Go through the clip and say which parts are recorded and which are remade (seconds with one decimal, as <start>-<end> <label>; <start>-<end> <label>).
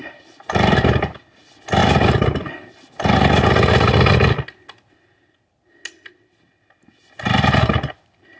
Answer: 0.0-8.4 recorded